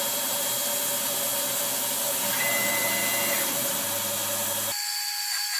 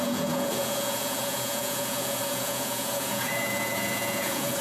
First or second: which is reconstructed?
second